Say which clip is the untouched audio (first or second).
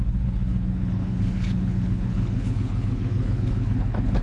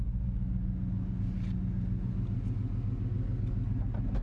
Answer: second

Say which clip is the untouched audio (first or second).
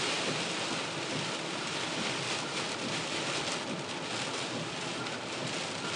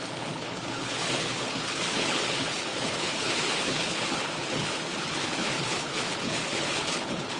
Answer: first